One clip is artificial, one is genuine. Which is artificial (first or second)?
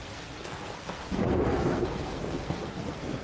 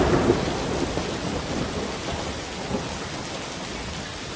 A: first